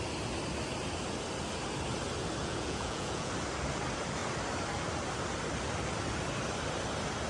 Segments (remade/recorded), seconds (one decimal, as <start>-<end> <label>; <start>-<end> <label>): 0.0-2.4 recorded; 2.4-3.3 remade; 3.3-7.3 recorded